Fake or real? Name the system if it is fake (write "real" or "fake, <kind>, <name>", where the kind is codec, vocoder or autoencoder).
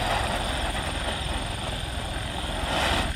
real